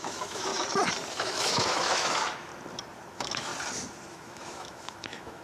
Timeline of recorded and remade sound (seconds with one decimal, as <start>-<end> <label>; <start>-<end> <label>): 0.0-0.5 remade; 0.5-1.1 recorded; 1.1-2.5 remade; 2.5-3.1 recorded; 3.1-3.5 remade; 3.5-4.1 recorded; 4.1-5.4 remade